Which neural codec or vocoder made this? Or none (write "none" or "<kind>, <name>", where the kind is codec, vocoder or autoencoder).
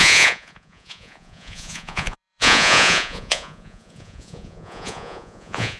vocoder, Vocos